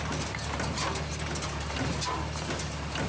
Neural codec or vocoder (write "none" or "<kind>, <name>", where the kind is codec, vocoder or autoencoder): none